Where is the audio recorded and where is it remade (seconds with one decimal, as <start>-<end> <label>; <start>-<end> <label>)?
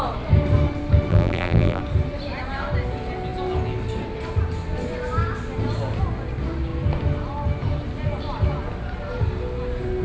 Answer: 0.0-1.1 recorded; 1.1-1.8 remade; 1.8-10.0 recorded